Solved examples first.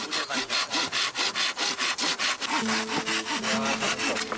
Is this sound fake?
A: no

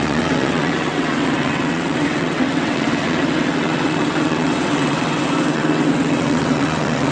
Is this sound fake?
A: yes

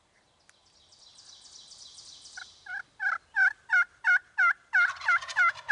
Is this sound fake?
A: no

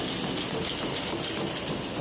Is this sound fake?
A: no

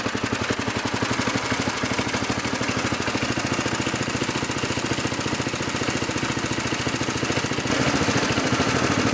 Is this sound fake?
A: no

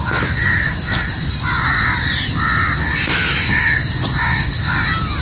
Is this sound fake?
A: no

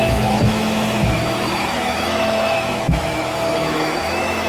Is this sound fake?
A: yes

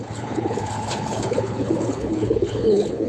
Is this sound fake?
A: yes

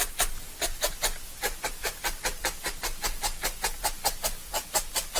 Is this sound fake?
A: no